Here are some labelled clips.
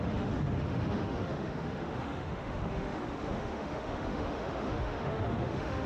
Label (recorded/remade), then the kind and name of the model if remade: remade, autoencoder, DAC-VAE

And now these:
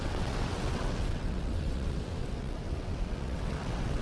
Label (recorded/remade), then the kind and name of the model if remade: remade, vocoder, WaveNeXt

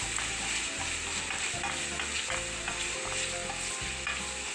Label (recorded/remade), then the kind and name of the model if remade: recorded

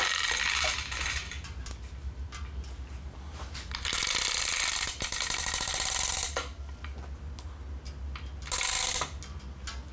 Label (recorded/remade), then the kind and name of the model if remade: recorded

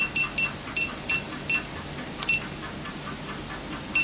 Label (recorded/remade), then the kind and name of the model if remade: recorded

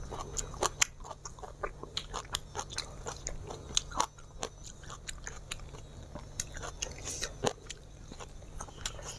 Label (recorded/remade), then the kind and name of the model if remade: recorded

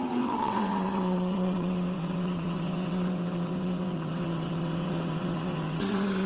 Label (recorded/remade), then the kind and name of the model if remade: remade, vocoder, WaveNeXt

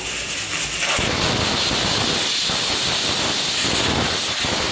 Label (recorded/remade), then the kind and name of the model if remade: recorded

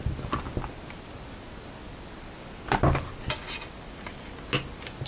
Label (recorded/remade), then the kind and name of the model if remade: recorded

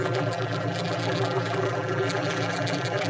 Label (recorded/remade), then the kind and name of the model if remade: remade, vocoder, BigVGAN v2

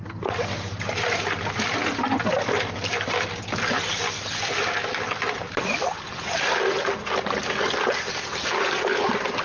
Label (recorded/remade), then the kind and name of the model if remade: recorded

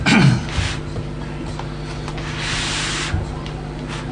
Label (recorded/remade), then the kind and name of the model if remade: recorded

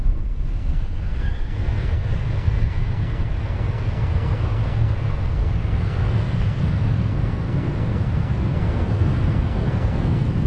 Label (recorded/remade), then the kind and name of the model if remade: remade, codec, SNAC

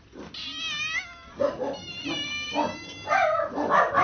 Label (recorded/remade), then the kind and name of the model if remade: recorded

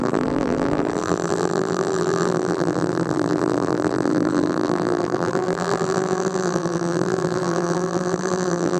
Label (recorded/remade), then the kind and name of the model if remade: remade, vocoder, BigVGAN v2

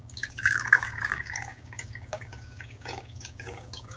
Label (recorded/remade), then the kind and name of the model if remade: remade, codec, DAC